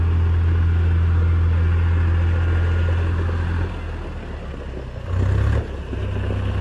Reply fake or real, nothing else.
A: real